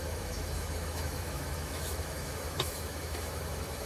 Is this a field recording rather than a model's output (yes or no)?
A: no